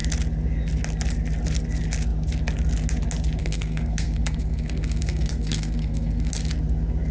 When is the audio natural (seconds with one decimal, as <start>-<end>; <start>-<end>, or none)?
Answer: 0.0-3.4; 6.3-7.1